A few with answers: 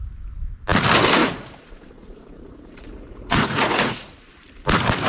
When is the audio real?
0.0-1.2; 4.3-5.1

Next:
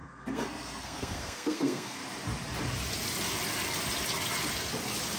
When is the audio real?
2.0-5.2

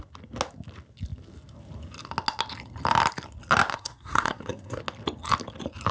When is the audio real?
0.0-3.7; 4.8-5.9

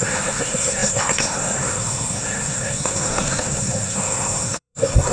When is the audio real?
none

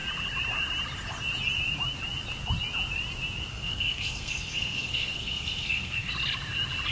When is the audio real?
0.0-3.5; 6.1-6.9

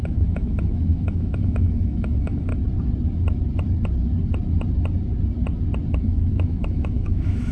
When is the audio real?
2.5-5.9

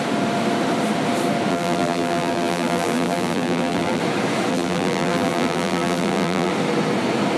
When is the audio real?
0.0-1.5; 4.0-4.5; 6.5-7.4